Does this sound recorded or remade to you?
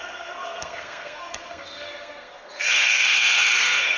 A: remade